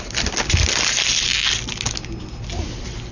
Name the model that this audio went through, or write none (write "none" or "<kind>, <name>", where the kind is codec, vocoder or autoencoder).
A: none